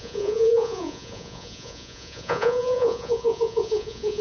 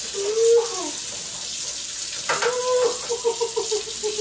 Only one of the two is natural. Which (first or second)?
second